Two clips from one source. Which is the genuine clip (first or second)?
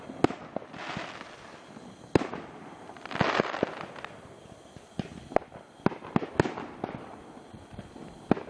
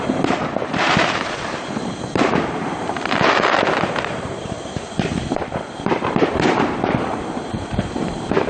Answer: first